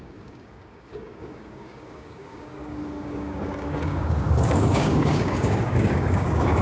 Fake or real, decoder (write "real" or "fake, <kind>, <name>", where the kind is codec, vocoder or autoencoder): fake, codec, DAC